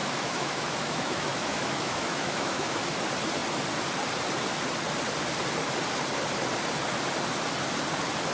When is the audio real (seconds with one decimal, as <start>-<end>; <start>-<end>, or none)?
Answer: 2.8-8.3

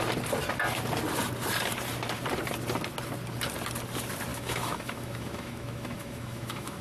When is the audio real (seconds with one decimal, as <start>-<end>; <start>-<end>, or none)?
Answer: 0.0-4.3

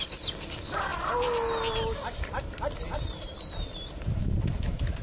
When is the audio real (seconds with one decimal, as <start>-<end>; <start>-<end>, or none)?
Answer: 0.0-4.2